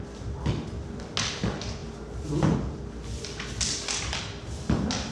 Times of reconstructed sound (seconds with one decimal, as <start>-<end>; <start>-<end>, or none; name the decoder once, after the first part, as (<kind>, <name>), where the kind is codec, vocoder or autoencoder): none